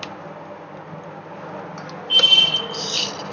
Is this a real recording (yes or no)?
yes